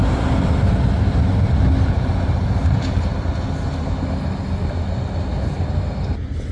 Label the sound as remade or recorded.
recorded